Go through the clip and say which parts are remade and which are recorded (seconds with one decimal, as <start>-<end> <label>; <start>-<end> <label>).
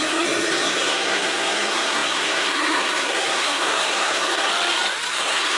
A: 0.0-4.5 remade; 4.5-5.1 recorded; 5.1-5.6 remade